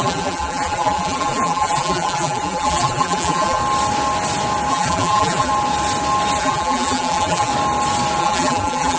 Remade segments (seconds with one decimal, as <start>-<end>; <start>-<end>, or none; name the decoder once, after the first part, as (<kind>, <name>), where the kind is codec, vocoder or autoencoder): 0.0-3.6 (vocoder, BigVGAN v2); 4.7-5.5; 6.4-7.5; 8.2-9.0